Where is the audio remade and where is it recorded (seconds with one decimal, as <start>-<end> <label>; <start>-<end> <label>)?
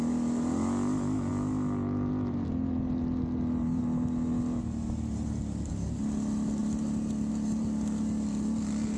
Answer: 0.0-9.0 recorded